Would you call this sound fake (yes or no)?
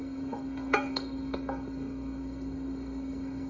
yes